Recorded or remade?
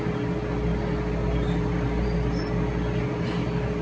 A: recorded